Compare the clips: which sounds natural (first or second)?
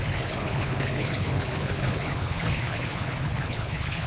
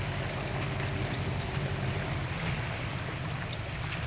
second